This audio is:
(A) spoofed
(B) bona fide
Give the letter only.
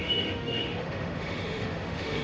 A